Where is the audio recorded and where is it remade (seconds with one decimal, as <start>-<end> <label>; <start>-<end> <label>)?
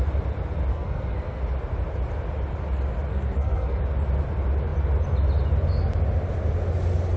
0.0-0.7 recorded; 0.7-1.4 remade; 1.4-3.1 recorded; 3.1-3.8 remade; 3.8-7.2 recorded